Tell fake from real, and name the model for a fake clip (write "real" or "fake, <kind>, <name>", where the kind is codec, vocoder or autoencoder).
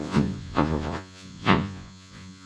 fake, vocoder, Vocos